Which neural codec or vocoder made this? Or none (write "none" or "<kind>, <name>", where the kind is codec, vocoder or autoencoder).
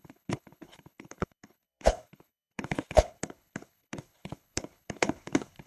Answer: codec, HILCodec